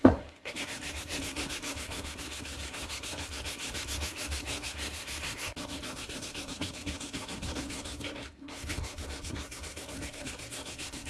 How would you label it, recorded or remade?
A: remade